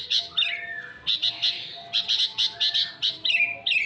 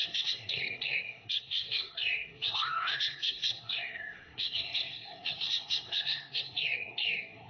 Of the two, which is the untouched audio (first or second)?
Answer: first